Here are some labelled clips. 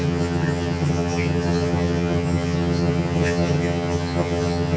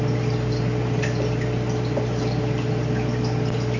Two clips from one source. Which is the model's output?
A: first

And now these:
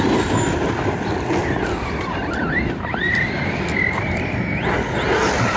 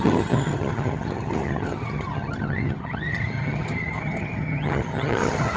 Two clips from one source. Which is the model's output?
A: second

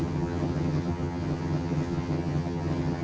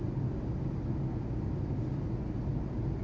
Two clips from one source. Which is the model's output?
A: first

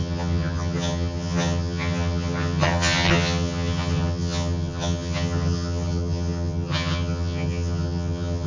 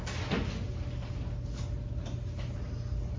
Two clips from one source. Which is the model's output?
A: first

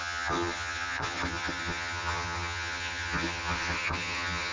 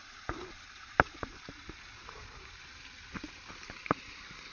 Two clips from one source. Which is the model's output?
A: first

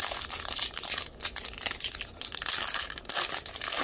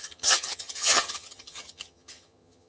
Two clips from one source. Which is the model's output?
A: second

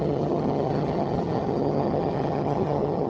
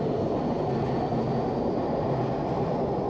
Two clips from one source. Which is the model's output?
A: first